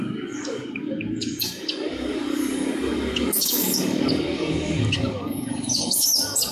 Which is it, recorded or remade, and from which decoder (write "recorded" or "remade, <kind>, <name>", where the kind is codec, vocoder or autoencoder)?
remade, codec, DAC